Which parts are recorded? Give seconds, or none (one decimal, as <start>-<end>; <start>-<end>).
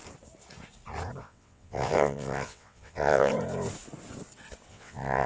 0.0-1.2; 3.3-4.7